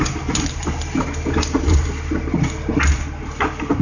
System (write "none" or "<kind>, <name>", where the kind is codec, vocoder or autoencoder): none